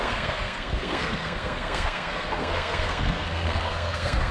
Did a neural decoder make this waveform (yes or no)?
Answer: yes